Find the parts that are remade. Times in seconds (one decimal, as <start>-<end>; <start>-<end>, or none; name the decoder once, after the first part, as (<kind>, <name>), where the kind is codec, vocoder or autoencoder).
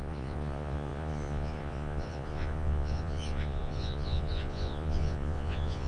0.0-5.9 (vocoder, Vocos)